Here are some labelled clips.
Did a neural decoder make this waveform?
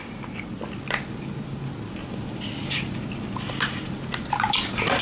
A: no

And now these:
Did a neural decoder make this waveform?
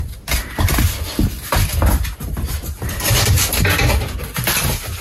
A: no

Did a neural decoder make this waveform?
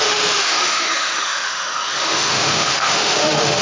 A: yes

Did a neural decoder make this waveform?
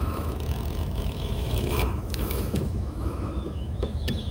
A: yes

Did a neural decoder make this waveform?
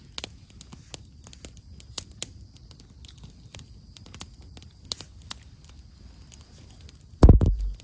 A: no